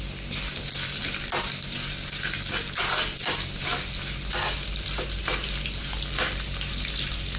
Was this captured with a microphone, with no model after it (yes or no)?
yes